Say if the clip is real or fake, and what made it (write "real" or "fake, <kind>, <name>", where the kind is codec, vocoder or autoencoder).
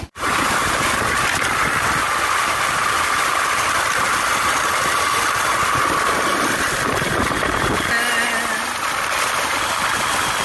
real